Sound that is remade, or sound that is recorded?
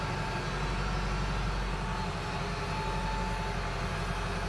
recorded